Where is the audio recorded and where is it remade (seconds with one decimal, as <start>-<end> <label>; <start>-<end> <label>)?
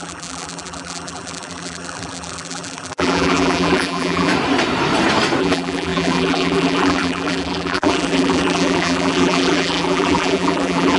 0.0-4.3 remade; 4.3-5.4 recorded; 5.4-11.0 remade